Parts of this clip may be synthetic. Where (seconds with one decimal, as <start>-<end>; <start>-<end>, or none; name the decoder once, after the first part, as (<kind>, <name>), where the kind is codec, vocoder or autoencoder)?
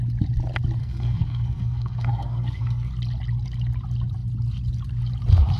0.8-2.9 (codec, SNAC)